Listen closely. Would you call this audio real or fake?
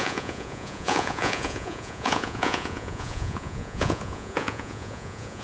fake